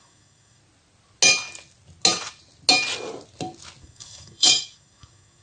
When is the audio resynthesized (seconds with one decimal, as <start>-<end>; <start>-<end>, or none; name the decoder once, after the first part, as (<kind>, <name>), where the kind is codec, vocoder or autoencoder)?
0.0-0.6 (codec, DAC); 3.8-5.4